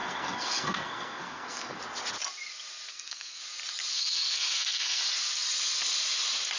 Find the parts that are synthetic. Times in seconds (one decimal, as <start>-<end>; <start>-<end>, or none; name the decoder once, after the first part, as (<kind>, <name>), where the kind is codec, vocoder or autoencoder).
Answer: 0.0-1.8 (codec, SNAC); 2.9-3.4; 3.9-5.0